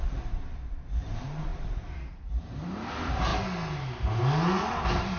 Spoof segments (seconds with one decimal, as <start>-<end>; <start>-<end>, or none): 0.0-3.3; 4.7-5.2